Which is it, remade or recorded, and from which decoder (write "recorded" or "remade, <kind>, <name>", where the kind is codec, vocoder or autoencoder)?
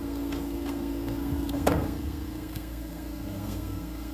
remade, codec, SNAC